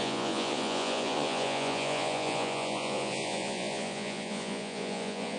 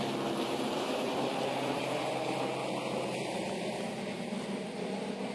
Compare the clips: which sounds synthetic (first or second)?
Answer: first